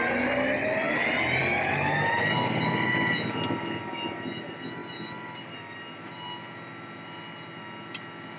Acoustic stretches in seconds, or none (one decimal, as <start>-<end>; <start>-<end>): 0.0-8.4